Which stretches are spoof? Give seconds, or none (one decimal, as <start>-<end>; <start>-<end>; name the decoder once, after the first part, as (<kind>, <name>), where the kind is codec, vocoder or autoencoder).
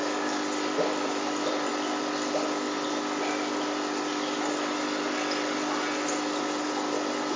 0.0-1.7 (vocoder, BigVGAN v2)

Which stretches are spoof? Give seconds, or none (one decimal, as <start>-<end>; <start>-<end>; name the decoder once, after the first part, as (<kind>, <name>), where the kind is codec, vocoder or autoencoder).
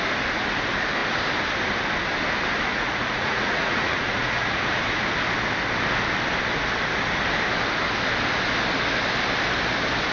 2.7-4.8 (vocoder, Vocos)